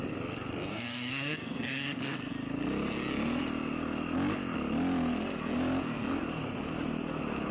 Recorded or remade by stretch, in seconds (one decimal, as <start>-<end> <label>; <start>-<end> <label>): 0.0-0.7 recorded; 0.7-2.3 remade; 2.3-7.5 recorded